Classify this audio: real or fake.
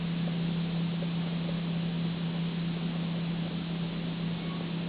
real